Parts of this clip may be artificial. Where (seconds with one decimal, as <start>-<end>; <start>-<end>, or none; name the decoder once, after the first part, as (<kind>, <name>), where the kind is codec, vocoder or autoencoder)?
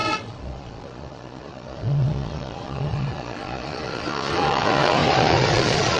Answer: 0.0-6.0 (vocoder, Vocos)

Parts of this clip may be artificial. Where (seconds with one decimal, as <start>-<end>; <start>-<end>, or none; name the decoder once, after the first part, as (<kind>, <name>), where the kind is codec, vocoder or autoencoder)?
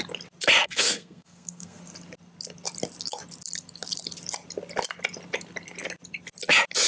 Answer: 0.6-1.8 (codec, SNAC)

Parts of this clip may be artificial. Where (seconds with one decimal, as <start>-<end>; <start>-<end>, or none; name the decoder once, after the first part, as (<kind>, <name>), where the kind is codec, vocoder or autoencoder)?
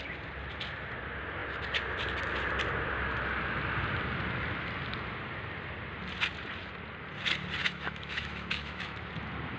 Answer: 7.6-9.1 (autoencoder, DAC-VAE)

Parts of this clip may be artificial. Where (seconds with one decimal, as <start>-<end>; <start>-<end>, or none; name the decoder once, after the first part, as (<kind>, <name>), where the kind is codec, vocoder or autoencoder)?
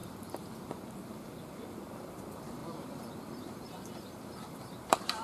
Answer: 0.6-5.2 (vocoder, BigVGAN v2)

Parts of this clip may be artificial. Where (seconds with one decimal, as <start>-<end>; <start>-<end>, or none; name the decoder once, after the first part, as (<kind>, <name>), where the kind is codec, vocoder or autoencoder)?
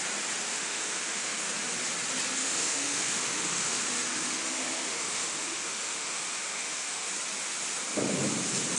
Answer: 0.5-1.5 (autoencoder, DAC-VAE); 2.4-7.1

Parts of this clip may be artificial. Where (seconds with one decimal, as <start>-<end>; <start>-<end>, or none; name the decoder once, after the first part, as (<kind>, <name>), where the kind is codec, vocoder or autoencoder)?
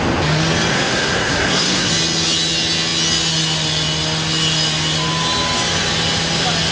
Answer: 0.7-1.9 (codec, SNAC)